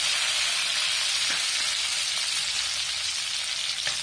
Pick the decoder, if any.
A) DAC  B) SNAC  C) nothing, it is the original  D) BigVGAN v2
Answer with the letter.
C